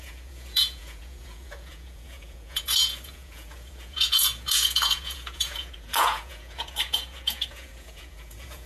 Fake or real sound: fake